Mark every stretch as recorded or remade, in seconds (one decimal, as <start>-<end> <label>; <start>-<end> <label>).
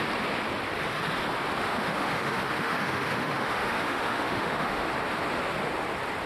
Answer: 0.0-1.7 recorded; 1.7-4.9 remade; 4.9-6.3 recorded